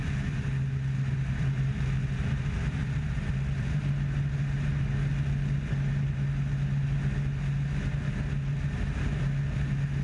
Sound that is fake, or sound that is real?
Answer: real